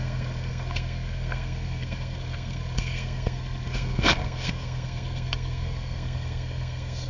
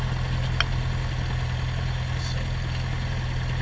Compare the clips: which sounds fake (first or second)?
first